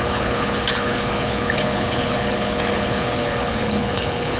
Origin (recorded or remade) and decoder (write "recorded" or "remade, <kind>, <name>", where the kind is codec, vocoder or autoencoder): remade, codec, HILCodec